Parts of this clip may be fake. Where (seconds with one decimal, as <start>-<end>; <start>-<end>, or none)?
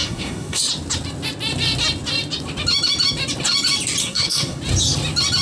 0.0-0.6; 4.0-4.6